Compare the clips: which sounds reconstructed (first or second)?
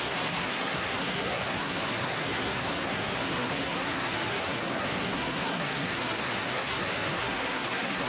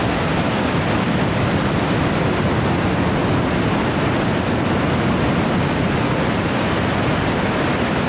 first